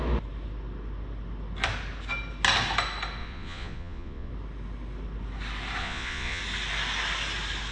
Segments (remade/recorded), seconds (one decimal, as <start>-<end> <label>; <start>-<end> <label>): 0.0-3.2 recorded; 3.2-4.3 remade; 4.3-5.8 recorded; 5.8-6.4 remade; 6.4-7.7 recorded